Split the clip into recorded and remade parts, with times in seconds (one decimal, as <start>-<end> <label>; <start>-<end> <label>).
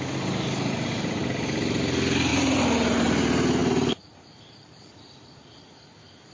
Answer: 0.0-2.3 recorded; 2.3-3.2 remade; 3.2-3.6 recorded; 3.6-5.8 remade; 5.8-6.3 recorded